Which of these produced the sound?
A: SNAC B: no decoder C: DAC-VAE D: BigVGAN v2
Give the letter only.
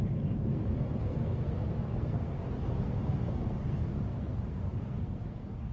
A